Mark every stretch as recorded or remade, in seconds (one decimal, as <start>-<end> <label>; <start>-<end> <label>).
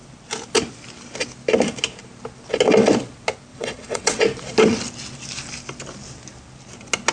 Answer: 0.0-3.5 recorded; 3.5-4.2 remade; 4.2-7.1 recorded